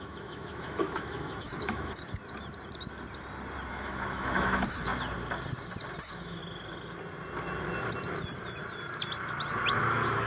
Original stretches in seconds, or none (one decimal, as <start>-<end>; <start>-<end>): 2.0-3.7; 4.9-6.0; 6.4-9.7